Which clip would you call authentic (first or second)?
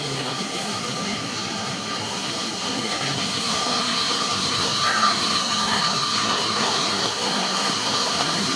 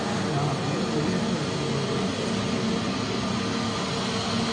second